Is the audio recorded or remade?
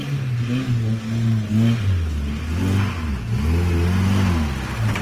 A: recorded